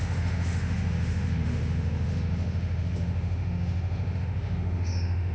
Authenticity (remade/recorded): remade